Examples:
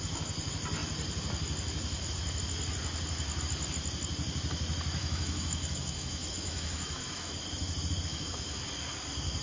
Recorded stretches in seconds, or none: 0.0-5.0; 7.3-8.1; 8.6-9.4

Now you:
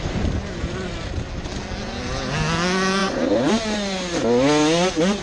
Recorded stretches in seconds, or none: 0.0-3.0; 3.5-5.2